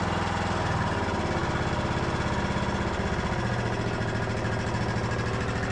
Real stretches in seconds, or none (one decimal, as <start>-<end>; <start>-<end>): 0.0-5.7